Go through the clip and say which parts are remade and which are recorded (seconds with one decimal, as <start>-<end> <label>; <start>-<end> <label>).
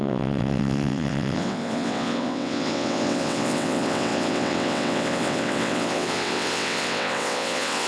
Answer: 0.0-7.9 remade